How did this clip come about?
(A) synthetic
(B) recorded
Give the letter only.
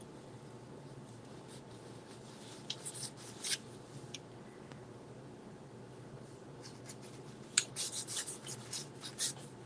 B